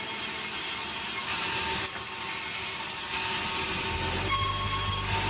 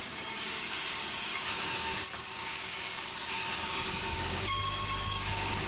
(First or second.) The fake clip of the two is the second